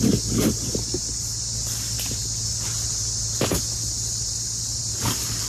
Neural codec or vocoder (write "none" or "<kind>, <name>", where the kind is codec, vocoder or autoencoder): vocoder, BigVGAN v2